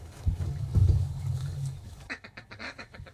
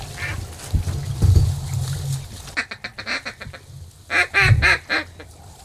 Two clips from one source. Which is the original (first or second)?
second